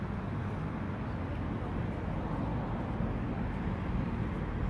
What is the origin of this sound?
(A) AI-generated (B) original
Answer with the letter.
B